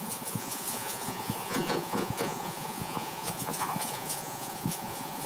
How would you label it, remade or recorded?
remade